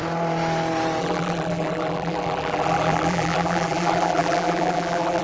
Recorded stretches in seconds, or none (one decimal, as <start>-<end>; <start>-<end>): 0.0-1.0